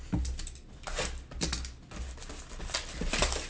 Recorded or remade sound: recorded